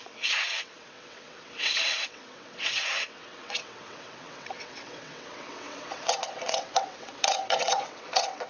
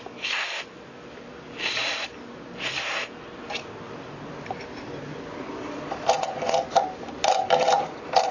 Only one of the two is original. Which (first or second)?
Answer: second